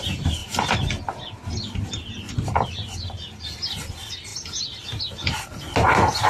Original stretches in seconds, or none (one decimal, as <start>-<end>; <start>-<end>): 0.0-6.3

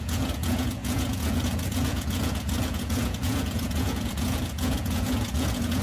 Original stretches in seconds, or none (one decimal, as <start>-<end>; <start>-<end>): none

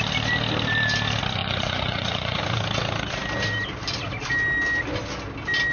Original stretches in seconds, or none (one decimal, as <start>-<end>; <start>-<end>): 0.0-1.4; 2.4-5.7

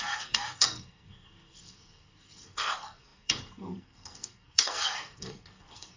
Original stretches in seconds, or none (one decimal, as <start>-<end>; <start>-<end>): none

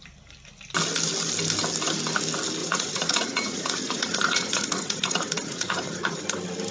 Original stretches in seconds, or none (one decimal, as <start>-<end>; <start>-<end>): 0.0-2.6; 6.2-6.7

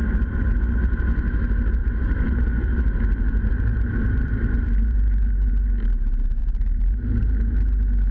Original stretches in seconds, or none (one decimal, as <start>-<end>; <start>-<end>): 0.6-1.8; 5.5-6.4; 7.0-8.1